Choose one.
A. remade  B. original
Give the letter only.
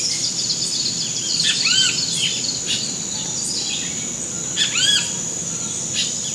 B